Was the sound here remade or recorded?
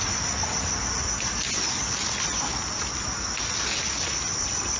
recorded